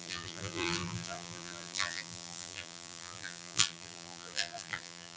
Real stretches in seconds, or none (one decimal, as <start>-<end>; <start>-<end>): none